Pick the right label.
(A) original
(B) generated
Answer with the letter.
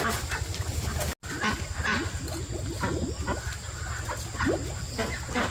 A